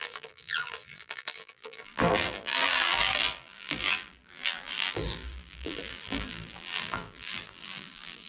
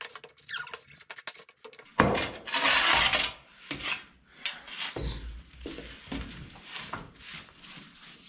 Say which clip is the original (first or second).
second